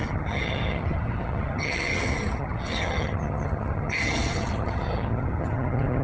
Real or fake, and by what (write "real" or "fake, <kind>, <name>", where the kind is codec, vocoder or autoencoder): fake, vocoder, HiFi-GAN